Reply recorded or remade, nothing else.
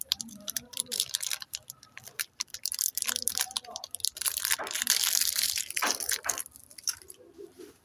remade